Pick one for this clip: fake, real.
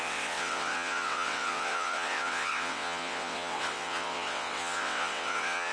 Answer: fake